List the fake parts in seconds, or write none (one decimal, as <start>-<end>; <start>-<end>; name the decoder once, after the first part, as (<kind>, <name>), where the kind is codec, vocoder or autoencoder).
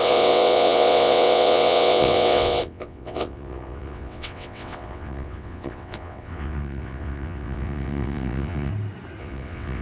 0.0-8.7 (vocoder, WaveNeXt); 9.2-9.8